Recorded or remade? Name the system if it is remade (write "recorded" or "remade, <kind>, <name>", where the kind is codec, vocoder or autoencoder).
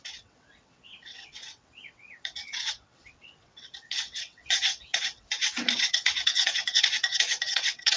remade, vocoder, WaveNeXt